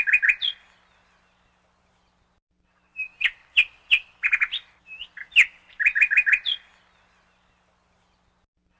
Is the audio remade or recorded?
recorded